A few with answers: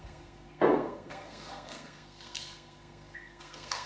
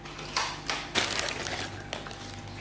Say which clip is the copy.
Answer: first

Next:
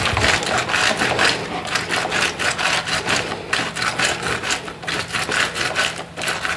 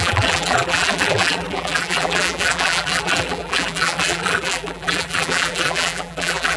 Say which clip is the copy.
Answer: second